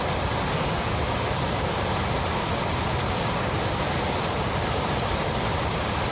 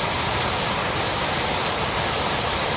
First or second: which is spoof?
first